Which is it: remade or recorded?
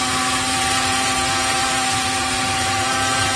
remade